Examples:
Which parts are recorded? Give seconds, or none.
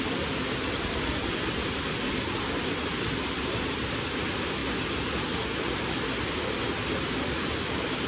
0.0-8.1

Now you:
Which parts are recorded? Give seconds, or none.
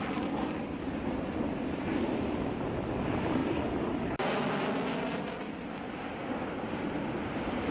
0.0-7.7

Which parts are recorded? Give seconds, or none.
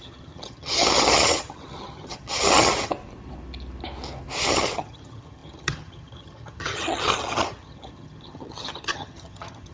2.9-4.4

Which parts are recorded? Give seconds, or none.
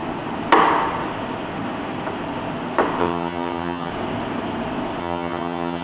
0.0-3.0; 3.9-5.0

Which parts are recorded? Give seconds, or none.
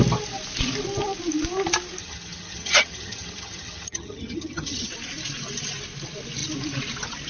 0.0-2.0; 4.9-7.3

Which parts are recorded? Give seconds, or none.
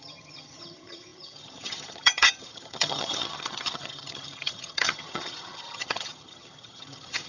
none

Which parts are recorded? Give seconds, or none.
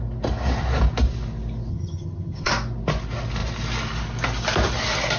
0.0-1.7; 2.5-5.2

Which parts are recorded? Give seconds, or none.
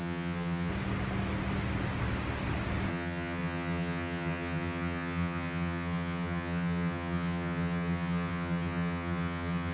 0.7-2.9